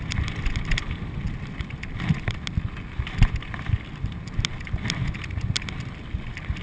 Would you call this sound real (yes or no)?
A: yes